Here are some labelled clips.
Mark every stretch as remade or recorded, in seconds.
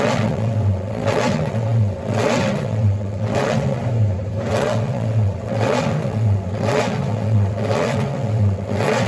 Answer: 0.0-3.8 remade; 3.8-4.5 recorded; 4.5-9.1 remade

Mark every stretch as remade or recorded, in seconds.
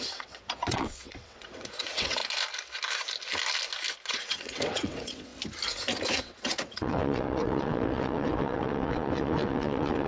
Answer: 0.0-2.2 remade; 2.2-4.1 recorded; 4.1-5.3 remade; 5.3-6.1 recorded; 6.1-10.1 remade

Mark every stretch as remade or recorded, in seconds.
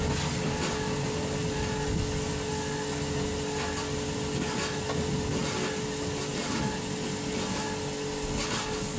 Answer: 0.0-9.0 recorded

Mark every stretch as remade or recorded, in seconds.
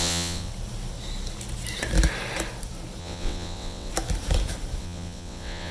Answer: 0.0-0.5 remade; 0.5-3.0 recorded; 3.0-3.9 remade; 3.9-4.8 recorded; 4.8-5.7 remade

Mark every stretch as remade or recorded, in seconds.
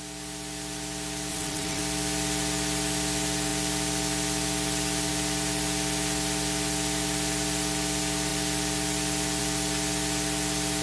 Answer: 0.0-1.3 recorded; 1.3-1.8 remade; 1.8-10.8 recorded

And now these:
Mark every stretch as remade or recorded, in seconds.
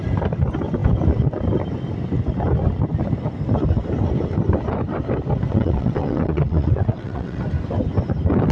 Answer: 0.0-5.5 recorded; 5.5-7.4 remade; 7.4-8.5 recorded